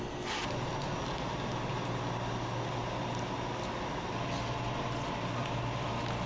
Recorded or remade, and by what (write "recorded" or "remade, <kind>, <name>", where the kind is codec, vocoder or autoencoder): recorded